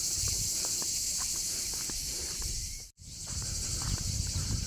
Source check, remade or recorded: remade